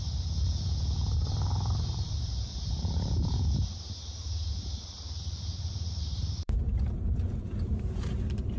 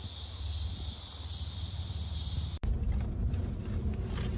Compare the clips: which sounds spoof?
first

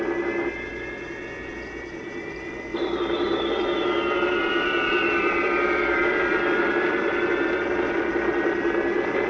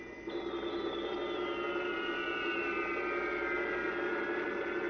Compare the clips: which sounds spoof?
first